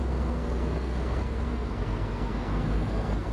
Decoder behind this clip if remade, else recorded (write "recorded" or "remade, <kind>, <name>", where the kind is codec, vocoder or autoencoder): remade, codec, SNAC